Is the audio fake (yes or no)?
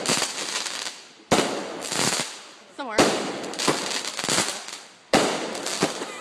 no